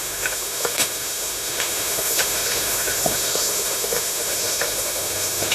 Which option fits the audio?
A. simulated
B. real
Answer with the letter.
A